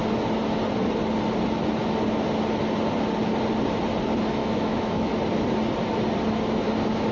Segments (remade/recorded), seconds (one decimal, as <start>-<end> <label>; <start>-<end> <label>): 0.0-4.4 recorded; 4.4-5.1 remade; 5.1-7.1 recorded